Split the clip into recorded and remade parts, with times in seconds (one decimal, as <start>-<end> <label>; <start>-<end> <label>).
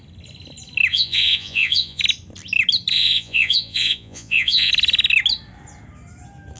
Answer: 0.0-0.9 recorded; 0.9-2.0 remade; 2.0-2.9 recorded; 2.9-4.7 remade; 4.7-6.6 recorded